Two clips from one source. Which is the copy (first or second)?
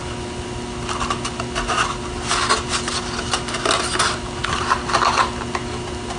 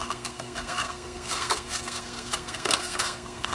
second